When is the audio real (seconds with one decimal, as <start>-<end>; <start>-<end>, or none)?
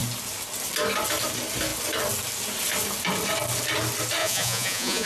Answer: 0.0-4.2